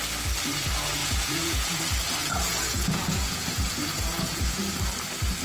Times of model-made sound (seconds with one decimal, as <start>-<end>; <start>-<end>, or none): 1.0-1.8; 2.2-4.6